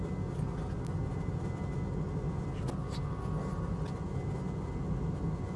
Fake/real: real